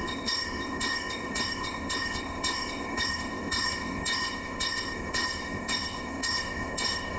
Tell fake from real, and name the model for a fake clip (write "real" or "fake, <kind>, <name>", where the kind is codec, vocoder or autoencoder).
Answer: fake, codec, ZipCodec